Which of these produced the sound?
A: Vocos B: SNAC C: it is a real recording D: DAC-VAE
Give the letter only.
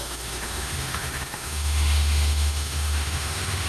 D